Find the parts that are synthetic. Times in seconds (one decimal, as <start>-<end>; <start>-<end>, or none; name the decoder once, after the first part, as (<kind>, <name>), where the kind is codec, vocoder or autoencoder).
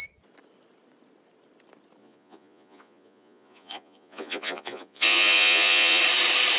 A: 2.0-6.0 (vocoder, Vocos)